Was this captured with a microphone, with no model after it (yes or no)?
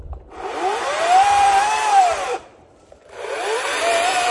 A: no